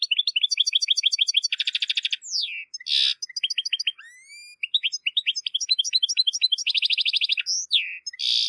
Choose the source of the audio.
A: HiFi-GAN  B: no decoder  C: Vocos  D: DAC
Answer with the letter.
B